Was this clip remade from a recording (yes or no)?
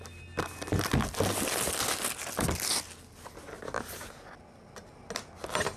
no